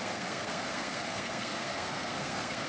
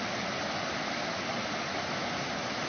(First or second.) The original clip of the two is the second